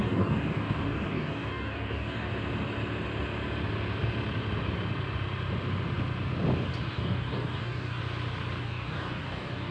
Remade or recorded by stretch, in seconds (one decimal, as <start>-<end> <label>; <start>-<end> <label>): 0.0-2.3 remade; 2.3-6.9 recorded; 6.9-8.0 remade; 8.0-8.6 recorded; 8.6-9.7 remade